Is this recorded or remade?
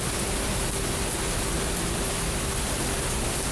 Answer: recorded